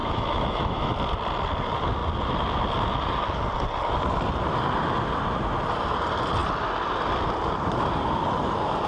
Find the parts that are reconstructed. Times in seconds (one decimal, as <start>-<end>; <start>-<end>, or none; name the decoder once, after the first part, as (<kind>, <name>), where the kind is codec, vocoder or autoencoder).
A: 0.0-0.9 (autoencoder, DAC-VAE)